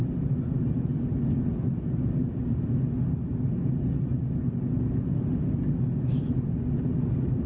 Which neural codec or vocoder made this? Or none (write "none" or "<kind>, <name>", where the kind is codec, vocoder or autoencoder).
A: none